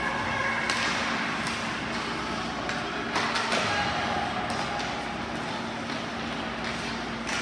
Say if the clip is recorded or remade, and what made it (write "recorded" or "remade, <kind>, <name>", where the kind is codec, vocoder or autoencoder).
recorded